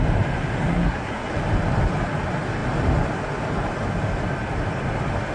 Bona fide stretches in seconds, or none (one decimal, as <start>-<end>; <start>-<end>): 0.0-0.7; 1.3-5.3